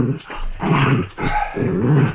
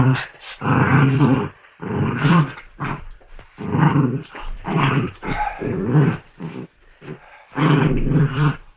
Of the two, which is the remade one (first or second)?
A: second